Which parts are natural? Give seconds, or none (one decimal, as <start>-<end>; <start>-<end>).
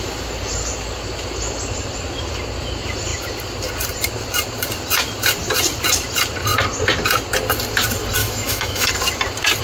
0.0-8.2; 8.9-9.6